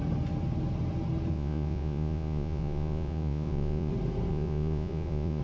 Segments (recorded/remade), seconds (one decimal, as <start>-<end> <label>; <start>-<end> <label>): 0.0-1.3 recorded; 1.3-3.9 remade; 3.9-4.3 recorded; 4.3-5.4 remade